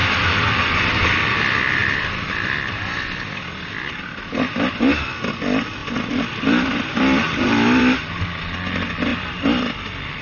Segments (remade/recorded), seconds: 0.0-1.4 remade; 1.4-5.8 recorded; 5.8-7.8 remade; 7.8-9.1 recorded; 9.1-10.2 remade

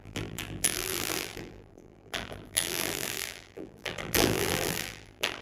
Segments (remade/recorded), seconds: 0.0-5.4 remade

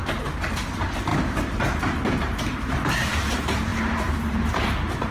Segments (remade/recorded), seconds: 0.0-0.7 recorded; 0.7-5.1 remade

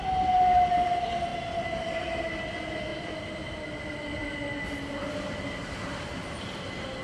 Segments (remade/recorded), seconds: 0.0-2.9 recorded; 2.9-3.5 remade; 3.5-7.0 recorded

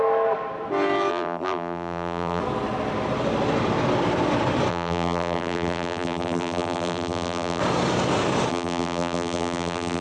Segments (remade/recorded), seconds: 0.0-1.1 recorded; 1.1-2.4 remade; 2.4-4.7 recorded; 4.7-7.6 remade; 7.6-8.5 recorded; 8.5-10.0 remade